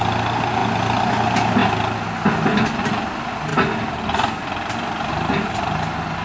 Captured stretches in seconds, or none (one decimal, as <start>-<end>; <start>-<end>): 0.0-6.2

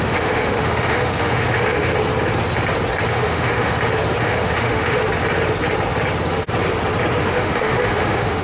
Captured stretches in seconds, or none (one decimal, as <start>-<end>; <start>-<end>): 1.9-3.1; 3.7-4.2; 5.0-7.2

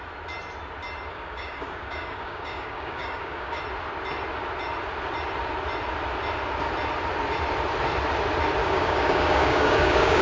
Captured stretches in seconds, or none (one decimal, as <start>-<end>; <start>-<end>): 0.0-1.1; 3.6-8.6

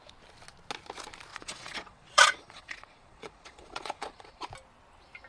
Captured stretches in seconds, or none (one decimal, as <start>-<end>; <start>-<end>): 0.0-1.3; 4.5-5.3

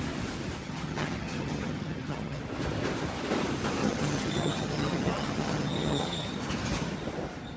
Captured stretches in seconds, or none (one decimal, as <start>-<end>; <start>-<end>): 0.0-0.6; 2.4-3.8; 6.3-7.6